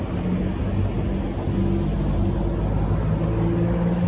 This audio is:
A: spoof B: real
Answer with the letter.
B